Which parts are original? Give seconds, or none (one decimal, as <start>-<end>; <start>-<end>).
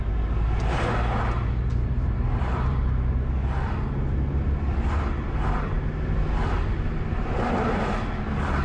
0.0-1.7; 2.8-8.6